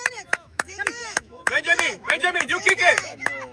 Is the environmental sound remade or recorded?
remade